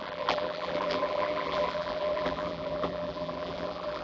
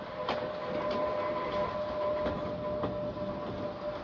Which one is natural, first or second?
second